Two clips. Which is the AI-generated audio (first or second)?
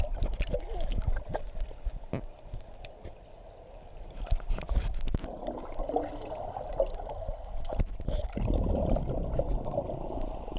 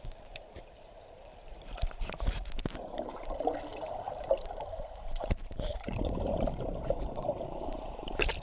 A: second